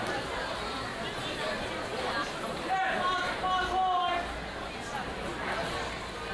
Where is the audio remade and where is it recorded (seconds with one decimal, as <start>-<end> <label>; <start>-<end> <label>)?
0.0-6.3 recorded